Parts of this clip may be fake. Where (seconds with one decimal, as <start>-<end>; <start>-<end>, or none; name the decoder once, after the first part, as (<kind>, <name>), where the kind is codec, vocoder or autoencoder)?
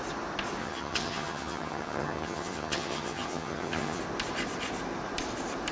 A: 0.6-4.0 (vocoder, HiFi-GAN)